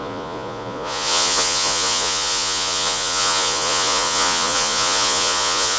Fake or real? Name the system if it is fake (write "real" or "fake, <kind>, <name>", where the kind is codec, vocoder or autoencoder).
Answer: fake, vocoder, Vocos